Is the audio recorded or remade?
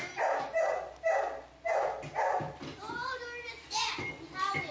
recorded